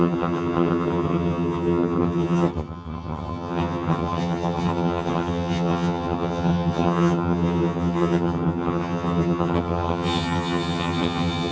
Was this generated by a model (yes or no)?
yes